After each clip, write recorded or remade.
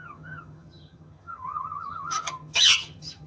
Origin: remade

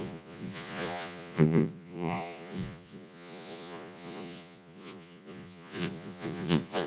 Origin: remade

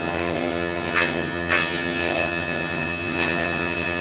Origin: remade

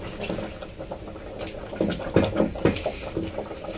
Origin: recorded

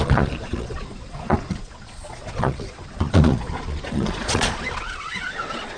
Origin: remade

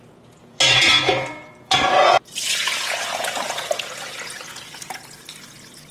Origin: remade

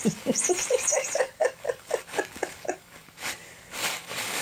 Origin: remade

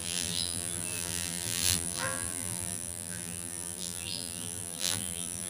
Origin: remade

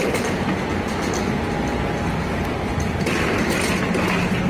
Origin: recorded